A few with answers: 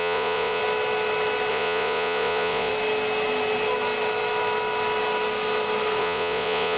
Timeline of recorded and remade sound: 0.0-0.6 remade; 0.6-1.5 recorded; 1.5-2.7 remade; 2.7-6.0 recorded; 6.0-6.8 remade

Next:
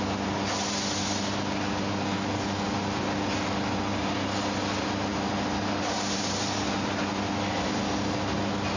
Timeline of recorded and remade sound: 0.0-8.8 recorded

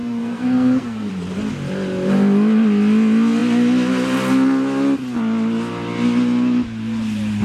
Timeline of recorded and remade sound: 0.0-1.1 remade; 1.1-7.4 recorded

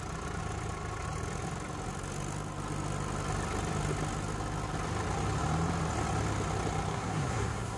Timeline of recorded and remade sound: 0.0-6.9 recorded; 6.9-7.8 remade

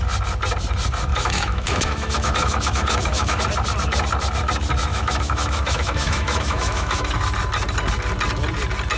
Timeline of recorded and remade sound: 0.0-1.1 recorded; 1.1-3.4 remade; 3.4-4.9 recorded; 4.9-7.1 remade; 7.1-9.0 recorded

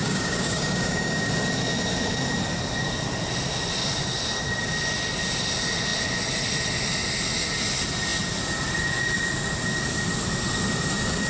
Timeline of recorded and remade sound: 0.0-1.3 remade; 1.3-11.3 recorded

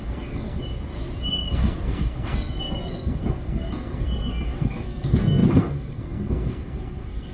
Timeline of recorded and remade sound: 0.0-0.6 remade; 0.6-1.2 recorded; 1.2-7.3 remade